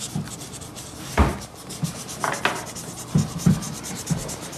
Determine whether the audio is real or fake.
real